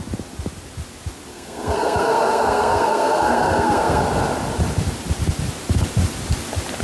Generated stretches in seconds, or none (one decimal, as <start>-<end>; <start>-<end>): 1.3-4.0